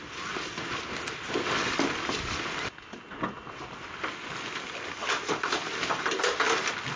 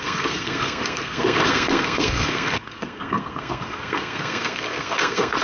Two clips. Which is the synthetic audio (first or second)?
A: second